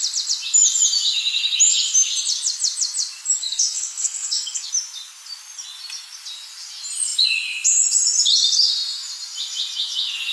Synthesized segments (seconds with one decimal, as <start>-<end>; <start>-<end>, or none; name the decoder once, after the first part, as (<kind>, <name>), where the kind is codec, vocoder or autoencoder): 3.4-4.7 (codec, SNAC)